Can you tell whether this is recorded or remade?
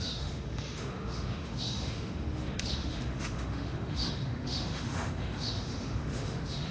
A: remade